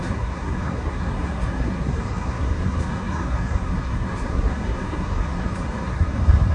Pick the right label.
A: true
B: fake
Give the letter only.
B